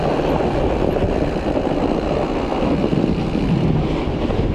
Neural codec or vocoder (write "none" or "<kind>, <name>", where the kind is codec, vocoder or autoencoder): none